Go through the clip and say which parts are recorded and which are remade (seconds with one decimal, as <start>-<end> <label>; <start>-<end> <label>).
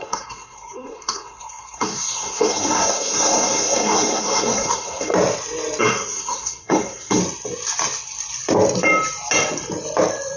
0.0-5.1 remade; 5.1-5.8 recorded; 5.8-7.2 remade; 7.2-10.4 recorded